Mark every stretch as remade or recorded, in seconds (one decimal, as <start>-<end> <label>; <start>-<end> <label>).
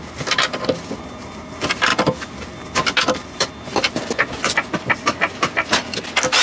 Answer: 0.0-6.4 recorded